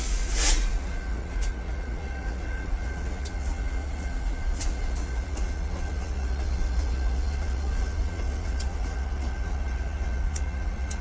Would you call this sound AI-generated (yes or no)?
yes